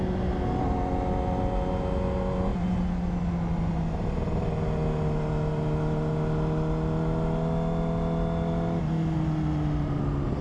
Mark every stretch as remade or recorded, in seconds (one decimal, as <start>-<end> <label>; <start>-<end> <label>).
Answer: 0.0-10.4 recorded